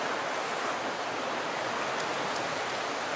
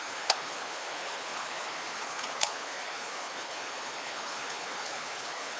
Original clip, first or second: first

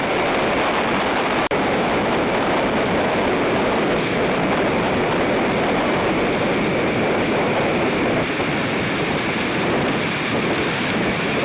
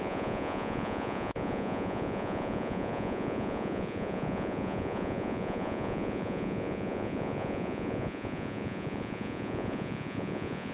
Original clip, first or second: first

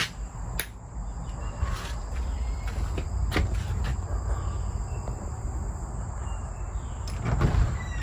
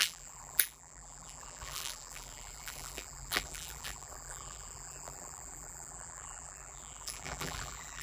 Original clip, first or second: first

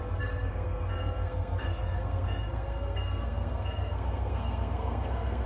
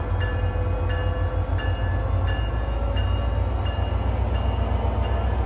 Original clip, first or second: second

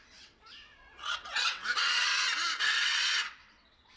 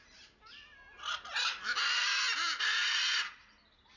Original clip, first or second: second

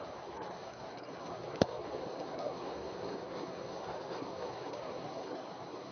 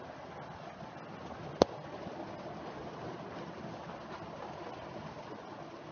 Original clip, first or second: second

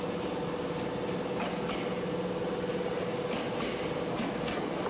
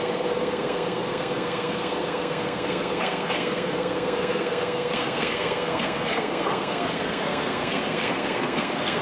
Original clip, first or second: first